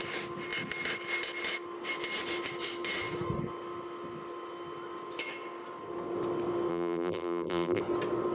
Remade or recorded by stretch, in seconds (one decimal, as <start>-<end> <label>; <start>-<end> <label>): 0.0-6.7 recorded; 6.7-7.8 remade; 7.8-8.3 recorded